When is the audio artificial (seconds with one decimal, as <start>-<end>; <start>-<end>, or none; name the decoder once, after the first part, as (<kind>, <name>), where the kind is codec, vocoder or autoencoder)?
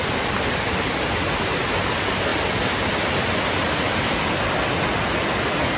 none